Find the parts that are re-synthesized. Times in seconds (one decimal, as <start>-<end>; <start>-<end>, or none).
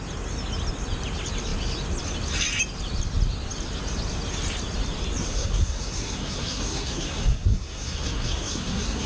5.2-9.1